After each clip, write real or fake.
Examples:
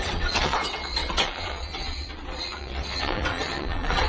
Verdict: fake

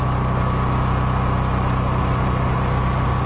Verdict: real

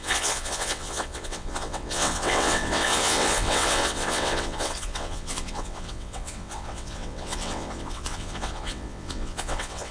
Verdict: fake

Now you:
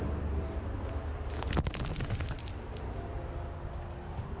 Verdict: real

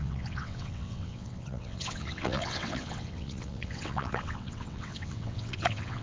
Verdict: fake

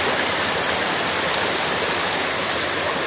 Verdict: real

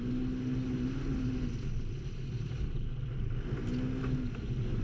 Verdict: real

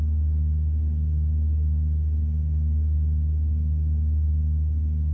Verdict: real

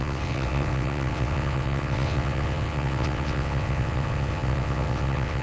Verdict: fake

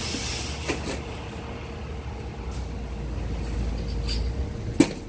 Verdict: real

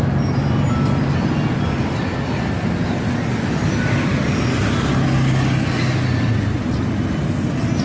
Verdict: real